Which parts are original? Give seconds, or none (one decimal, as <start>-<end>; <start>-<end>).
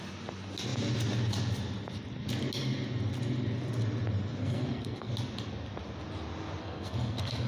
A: 0.0-4.4; 5.1-6.6